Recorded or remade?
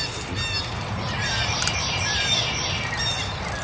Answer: recorded